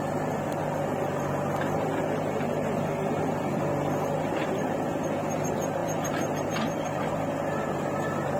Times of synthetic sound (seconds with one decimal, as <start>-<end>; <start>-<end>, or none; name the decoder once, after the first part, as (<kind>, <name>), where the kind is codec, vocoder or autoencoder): 5.8-7.1 (vocoder, BigVGAN v2)